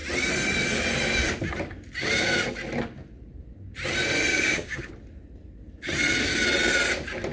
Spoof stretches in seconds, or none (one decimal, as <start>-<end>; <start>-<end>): 4.3-4.9